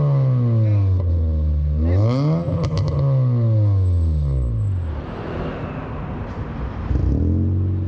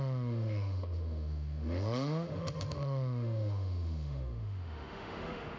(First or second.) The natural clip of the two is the first